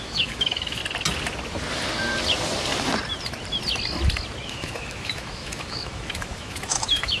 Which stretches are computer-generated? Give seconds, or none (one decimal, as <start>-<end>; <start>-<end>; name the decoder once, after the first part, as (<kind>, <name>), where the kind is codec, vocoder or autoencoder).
0.0-0.8 (autoencoder, DAC-VAE); 4.5-7.2